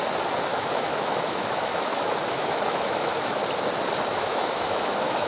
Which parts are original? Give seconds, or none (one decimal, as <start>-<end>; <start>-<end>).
0.0-0.5; 3.4-4.1